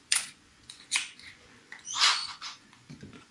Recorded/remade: remade